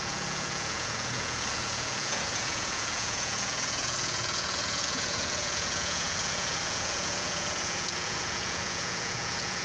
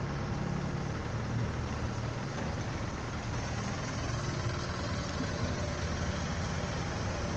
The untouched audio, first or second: second